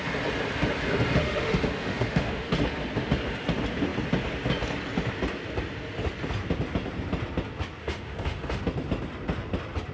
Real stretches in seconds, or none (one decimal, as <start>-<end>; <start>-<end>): 0.0-1.2; 2.5-7.8; 8.6-9.9